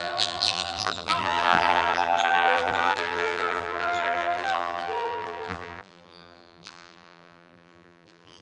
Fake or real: fake